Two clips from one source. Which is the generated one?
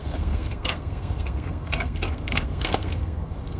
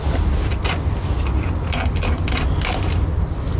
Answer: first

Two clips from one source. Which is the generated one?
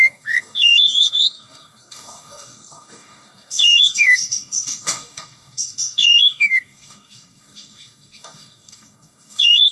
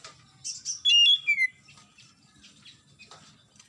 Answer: first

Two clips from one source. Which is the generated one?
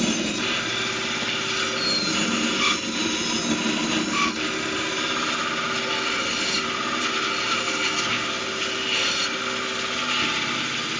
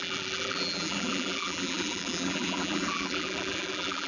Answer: second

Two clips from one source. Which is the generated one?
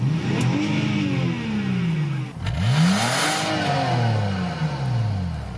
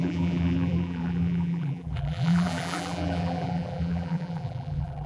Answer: second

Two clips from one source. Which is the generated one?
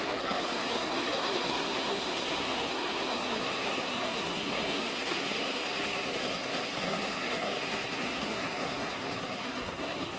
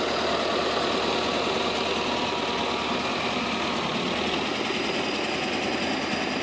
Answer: first